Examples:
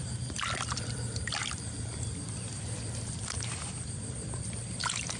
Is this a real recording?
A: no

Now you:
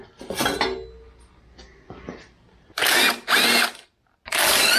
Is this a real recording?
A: yes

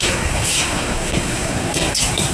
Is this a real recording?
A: no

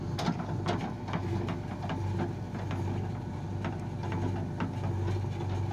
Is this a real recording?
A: yes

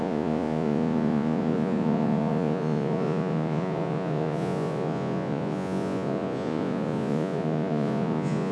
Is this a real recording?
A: no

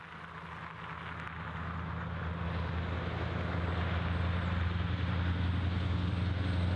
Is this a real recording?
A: yes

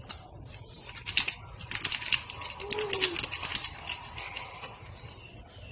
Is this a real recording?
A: yes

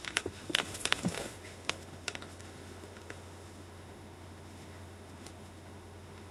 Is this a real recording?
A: no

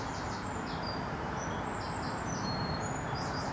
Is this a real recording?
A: yes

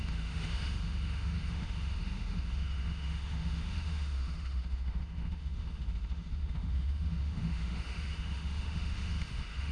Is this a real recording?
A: no